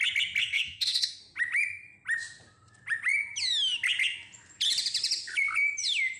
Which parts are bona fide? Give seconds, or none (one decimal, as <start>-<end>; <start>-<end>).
0.0-0.4; 1.2-6.2